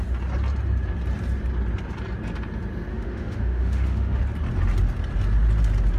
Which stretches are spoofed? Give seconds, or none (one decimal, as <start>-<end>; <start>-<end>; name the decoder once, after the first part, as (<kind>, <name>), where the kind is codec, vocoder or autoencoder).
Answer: 2.9-4.2 (autoencoder, DAC-VAE)